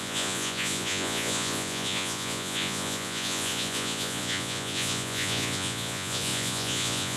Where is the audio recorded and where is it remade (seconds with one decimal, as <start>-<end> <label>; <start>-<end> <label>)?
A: 0.0-7.2 remade